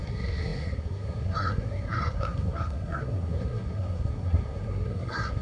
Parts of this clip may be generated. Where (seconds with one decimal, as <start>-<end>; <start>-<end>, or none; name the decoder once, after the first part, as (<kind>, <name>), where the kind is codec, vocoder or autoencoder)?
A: 0.0-5.4 (codec, SNAC)